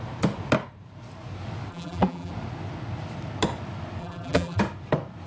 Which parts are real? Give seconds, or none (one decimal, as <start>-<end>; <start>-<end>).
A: 0.0-1.7; 2.3-4.0; 4.6-5.3